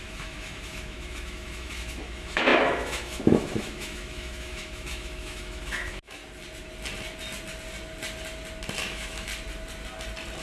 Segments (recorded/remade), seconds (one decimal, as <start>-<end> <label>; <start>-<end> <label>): 0.0-6.2 remade; 6.2-8.8 recorded; 8.8-9.3 remade; 9.3-10.4 recorded